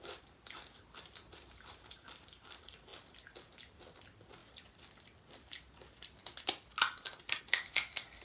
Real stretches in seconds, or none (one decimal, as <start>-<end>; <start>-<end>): 0.0-8.2